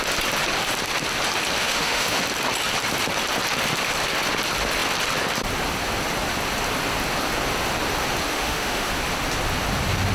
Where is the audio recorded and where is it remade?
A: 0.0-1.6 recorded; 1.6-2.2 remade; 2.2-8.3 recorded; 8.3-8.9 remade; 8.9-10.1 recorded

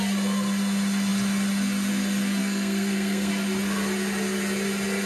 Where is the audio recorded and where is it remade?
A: 0.0-2.4 recorded; 2.4-3.3 remade; 3.3-5.1 recorded

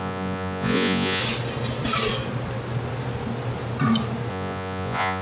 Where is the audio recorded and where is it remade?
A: 0.0-1.2 remade; 1.2-4.3 recorded; 4.3-5.2 remade

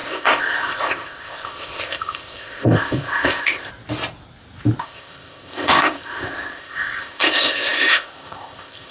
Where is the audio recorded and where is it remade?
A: 0.0-3.7 remade; 3.7-4.8 recorded; 4.8-8.9 remade

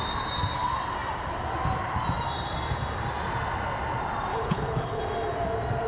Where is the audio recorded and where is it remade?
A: 0.0-4.3 recorded; 4.3-5.0 remade; 5.0-5.9 recorded

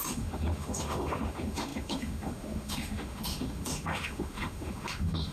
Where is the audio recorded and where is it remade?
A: 0.0-5.3 remade

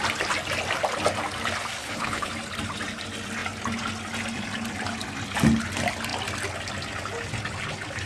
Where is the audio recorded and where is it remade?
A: 0.0-1.8 recorded; 1.8-2.3 remade; 2.3-8.1 recorded